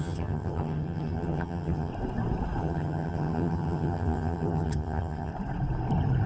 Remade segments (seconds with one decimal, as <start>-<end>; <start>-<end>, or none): 0.0-1.9; 2.6-5.3

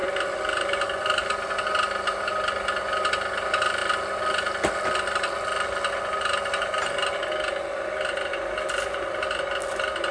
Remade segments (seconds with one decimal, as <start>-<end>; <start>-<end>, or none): none

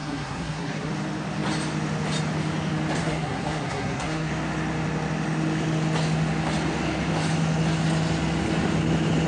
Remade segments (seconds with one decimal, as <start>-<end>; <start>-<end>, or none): 0.0-0.9; 3.0-4.3

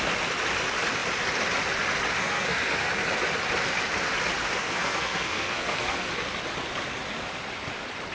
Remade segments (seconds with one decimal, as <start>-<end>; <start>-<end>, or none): 2.2-2.9; 4.6-6.1

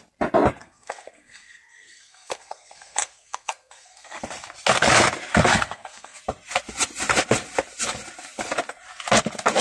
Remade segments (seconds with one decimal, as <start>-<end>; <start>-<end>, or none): 0.6-4.2; 5.5-6.2

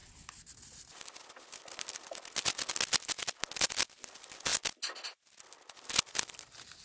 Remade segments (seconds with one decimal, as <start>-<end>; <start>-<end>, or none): none

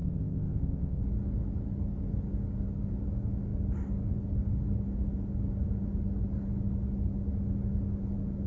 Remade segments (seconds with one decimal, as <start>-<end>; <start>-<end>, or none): 0.0-1.0

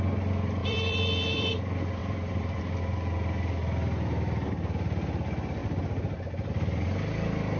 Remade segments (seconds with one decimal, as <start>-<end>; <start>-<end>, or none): 0.6-1.5; 2.0-2.6